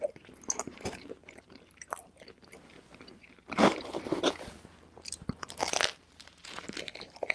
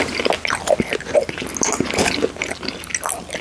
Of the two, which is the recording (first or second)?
second